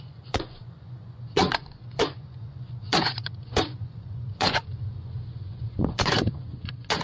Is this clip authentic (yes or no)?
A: no